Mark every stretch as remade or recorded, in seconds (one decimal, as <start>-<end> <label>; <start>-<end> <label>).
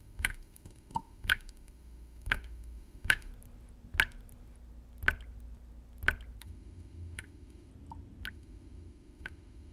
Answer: 0.0-3.3 remade; 3.3-6.4 recorded; 6.4-7.7 remade; 7.7-8.3 recorded; 8.3-9.7 remade